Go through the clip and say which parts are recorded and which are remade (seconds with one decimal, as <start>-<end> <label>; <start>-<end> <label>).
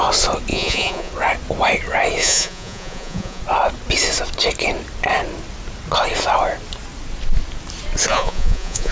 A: 0.0-0.5 recorded; 0.5-1.1 remade; 1.1-2.2 recorded; 2.2-3.4 remade; 3.4-8.1 recorded; 8.1-8.9 remade